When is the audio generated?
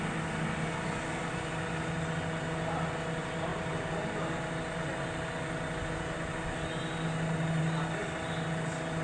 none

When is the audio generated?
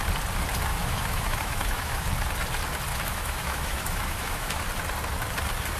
0.7-2.1 (autoencoder, DAC-VAE); 2.9-4.6